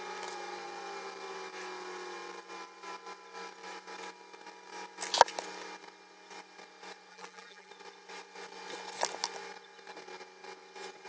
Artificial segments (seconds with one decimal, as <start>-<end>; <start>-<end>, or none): 7.1-7.7